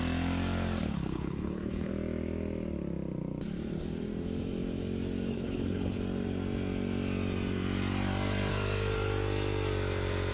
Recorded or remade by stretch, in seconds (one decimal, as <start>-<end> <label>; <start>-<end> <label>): 0.0-0.8 recorded; 0.8-1.9 remade; 1.9-5.3 recorded; 5.3-6.0 remade; 6.0-10.3 recorded

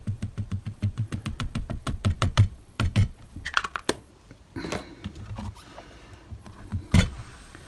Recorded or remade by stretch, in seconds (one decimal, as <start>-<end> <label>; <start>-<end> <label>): 0.0-4.1 remade; 4.1-6.4 recorded; 6.4-7.7 remade

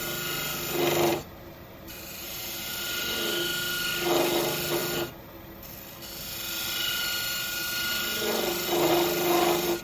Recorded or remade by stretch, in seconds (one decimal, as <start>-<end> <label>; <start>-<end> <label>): 0.0-1.1 recorded; 1.1-2.7 remade; 2.7-9.8 recorded